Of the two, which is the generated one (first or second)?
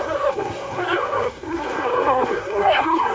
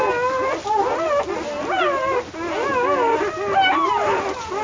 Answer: first